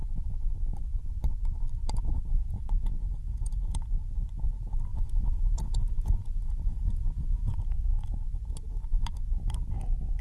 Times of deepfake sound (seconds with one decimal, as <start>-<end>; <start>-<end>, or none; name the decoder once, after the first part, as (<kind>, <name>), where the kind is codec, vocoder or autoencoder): 2.4-3.9 (vocoder, Vocos); 4.9-7.6